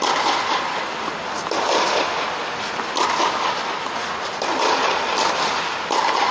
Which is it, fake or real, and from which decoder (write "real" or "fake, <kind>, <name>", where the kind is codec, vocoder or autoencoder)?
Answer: real